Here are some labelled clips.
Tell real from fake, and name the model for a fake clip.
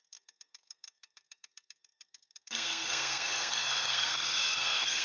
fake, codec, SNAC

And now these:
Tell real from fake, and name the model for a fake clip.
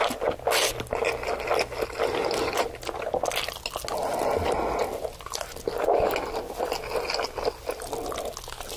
real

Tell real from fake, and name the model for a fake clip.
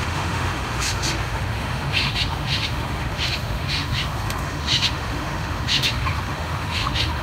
fake, autoencoder, DAC-VAE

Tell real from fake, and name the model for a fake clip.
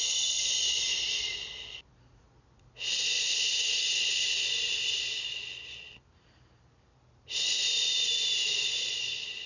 real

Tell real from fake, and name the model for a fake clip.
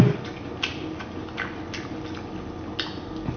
real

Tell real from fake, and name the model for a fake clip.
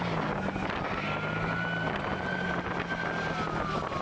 real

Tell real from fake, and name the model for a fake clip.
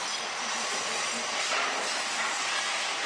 real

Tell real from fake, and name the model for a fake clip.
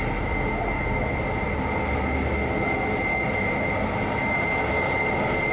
real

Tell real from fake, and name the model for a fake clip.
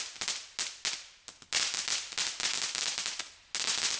real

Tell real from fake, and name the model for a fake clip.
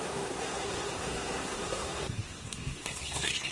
fake, codec, SNAC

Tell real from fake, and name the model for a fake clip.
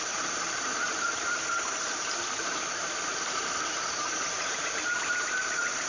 fake, vocoder, BigVGAN v2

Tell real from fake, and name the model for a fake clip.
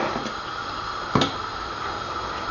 real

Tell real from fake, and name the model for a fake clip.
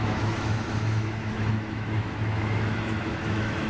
fake, autoencoder, DAC-VAE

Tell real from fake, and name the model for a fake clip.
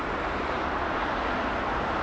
real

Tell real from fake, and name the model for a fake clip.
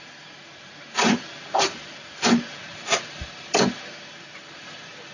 fake, vocoder, BigVGAN v2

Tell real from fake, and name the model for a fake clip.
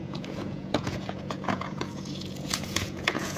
fake, vocoder, Vocos